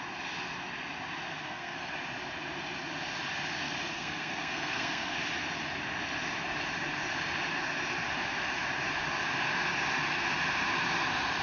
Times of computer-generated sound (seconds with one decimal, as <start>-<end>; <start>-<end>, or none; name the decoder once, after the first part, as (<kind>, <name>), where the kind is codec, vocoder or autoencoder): 1.3-1.9 (codec, SNAC); 3.9-5.2